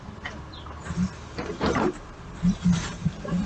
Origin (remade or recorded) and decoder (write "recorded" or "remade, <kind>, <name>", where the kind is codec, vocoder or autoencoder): remade, vocoder, BigVGAN v2